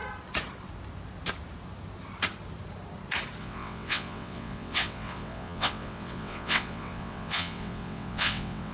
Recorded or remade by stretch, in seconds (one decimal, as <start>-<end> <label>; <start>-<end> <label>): 0.0-3.4 recorded; 3.4-8.7 remade